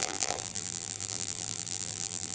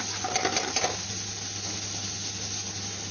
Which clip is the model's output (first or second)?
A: first